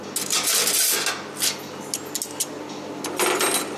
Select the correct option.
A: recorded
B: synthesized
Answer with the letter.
A